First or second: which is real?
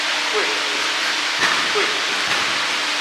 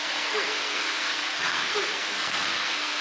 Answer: first